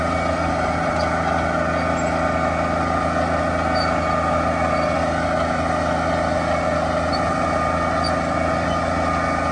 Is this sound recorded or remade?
recorded